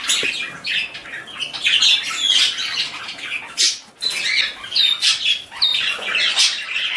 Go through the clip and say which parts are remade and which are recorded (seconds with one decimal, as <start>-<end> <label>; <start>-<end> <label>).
0.0-5.7 recorded; 5.7-6.4 remade; 6.4-7.0 recorded